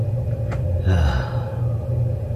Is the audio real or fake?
fake